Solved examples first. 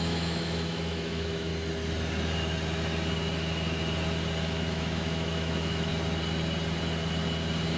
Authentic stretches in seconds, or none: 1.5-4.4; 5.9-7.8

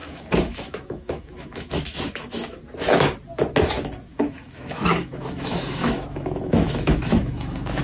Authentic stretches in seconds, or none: 2.6-4.1

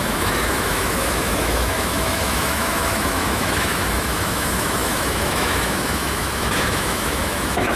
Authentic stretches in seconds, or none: none

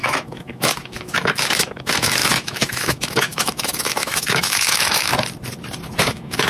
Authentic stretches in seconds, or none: 5.1-6.0

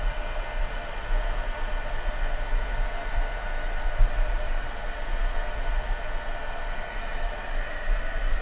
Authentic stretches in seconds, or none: 0.0-8.4

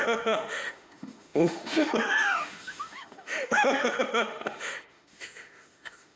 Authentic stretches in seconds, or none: none

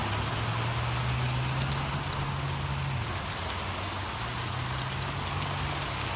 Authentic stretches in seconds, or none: 0.0-6.2

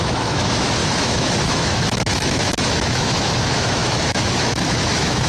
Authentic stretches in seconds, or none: none